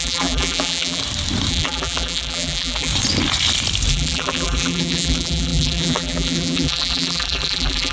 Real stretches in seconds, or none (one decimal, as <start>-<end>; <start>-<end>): 1.0-1.5; 2.9-3.9